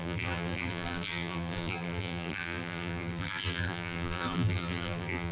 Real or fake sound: fake